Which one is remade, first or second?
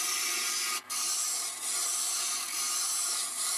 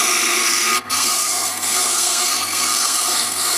second